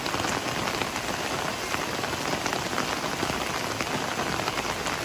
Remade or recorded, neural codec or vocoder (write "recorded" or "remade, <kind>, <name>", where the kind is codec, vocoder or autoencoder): recorded